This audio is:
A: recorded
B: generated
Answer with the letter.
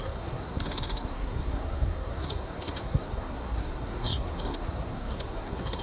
B